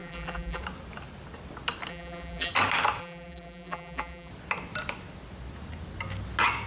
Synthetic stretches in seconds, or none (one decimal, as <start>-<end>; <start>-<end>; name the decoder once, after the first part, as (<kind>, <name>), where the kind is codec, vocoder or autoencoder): 0.0-0.6 (vocoder, BigVGAN v2); 1.9-2.5; 3.0-4.3